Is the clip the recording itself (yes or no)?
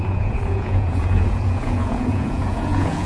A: no